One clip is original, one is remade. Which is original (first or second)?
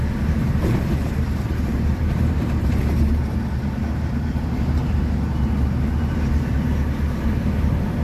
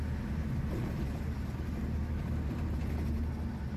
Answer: second